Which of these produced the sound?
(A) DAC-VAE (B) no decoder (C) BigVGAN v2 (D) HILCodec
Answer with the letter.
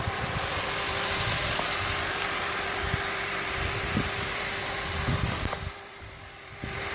C